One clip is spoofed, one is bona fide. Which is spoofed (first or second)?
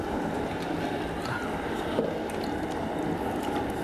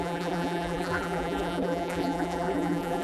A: second